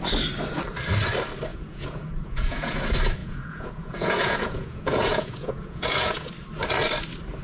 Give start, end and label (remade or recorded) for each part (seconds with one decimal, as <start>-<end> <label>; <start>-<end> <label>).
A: 0.0-1.5 recorded; 1.5-2.8 remade; 2.8-3.2 recorded; 3.2-6.3 remade; 6.3-7.4 recorded